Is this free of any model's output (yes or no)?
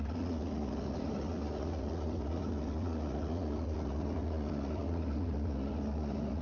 no